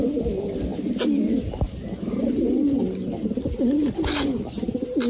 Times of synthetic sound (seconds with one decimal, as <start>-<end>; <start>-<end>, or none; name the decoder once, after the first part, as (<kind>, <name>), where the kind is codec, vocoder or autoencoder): none